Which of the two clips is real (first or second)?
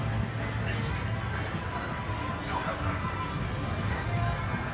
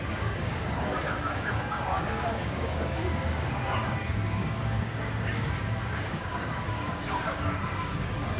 first